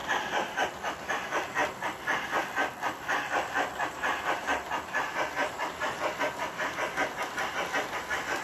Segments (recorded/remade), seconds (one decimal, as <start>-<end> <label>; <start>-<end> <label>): 0.0-1.1 remade; 1.1-1.6 recorded; 1.6-6.2 remade; 6.2-8.4 recorded